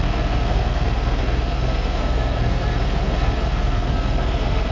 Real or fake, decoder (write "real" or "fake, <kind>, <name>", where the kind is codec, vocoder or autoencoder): fake, codec, SNAC